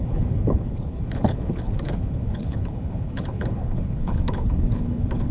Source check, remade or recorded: remade